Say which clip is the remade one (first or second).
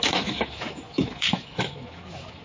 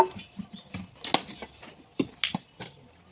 first